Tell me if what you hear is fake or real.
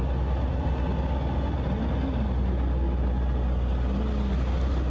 real